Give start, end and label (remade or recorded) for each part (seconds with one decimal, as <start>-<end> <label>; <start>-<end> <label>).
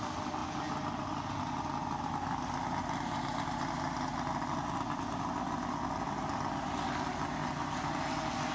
0.0-8.5 recorded